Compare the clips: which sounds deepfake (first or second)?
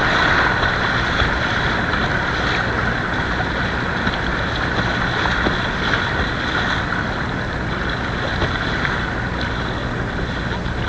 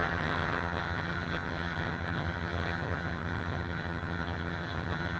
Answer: second